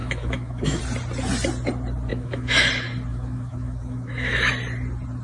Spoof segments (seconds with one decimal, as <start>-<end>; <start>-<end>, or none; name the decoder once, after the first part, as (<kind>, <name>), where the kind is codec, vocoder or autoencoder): 0.0-0.8 (autoencoder, DAC-VAE); 2.1-2.7; 3.1-4.5